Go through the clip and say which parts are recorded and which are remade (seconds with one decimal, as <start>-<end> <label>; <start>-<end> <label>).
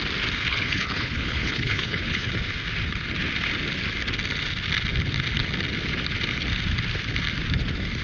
0.0-0.5 recorded; 0.5-2.3 remade; 2.3-8.0 recorded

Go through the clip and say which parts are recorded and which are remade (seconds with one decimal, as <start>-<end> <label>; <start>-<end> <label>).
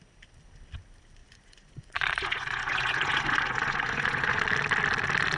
0.0-1.2 recorded; 1.2-4.4 remade; 4.4-5.4 recorded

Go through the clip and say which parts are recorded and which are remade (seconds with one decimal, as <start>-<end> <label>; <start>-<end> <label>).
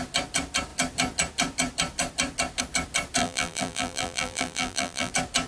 0.0-3.2 recorded; 3.2-5.1 remade; 5.1-5.5 recorded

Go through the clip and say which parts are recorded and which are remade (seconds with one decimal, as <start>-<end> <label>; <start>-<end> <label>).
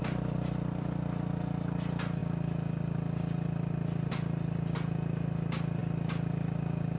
0.0-7.0 recorded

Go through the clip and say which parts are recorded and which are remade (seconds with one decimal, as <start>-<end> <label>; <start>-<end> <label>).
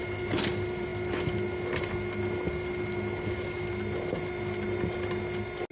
0.0-5.7 recorded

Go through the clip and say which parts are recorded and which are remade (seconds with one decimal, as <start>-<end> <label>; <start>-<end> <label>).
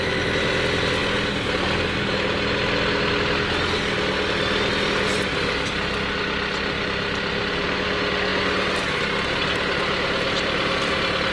0.0-11.3 recorded